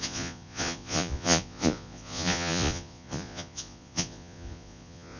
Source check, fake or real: fake